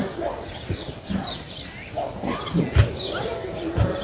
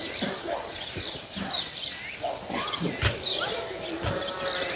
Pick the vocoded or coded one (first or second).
second